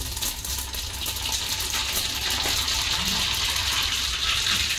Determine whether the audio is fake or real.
real